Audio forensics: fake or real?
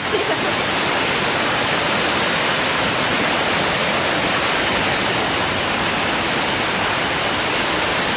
real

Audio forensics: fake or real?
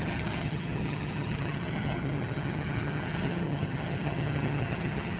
fake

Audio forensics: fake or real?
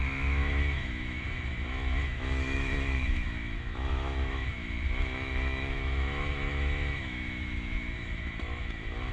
fake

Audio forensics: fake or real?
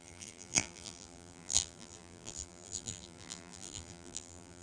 fake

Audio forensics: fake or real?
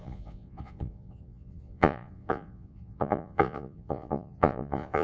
fake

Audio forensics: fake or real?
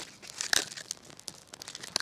real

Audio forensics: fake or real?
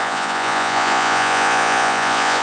fake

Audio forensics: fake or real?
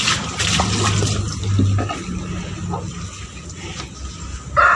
real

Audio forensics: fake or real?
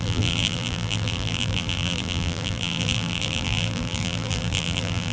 fake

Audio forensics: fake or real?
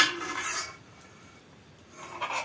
real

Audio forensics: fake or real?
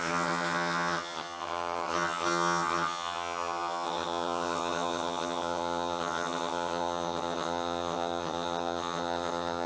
fake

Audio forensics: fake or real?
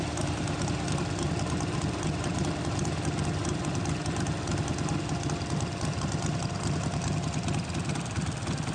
real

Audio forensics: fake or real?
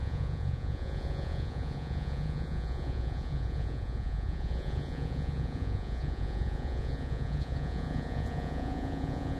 fake